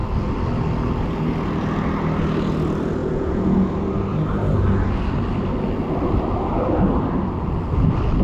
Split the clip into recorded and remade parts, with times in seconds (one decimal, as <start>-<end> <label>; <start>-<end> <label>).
0.0-3.0 recorded; 3.0-3.7 remade; 3.7-8.2 recorded